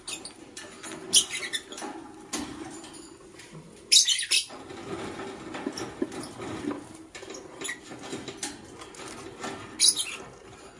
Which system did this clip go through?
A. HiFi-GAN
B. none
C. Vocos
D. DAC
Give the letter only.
B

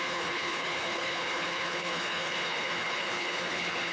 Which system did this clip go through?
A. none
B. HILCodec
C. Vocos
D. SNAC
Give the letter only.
B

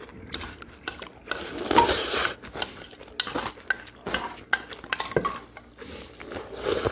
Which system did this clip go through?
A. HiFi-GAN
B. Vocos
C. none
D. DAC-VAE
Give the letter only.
C